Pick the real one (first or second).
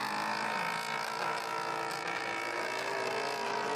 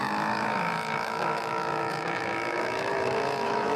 first